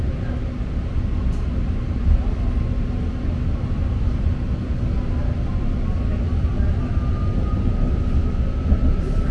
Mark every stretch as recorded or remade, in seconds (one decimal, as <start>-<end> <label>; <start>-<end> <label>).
0.0-9.3 recorded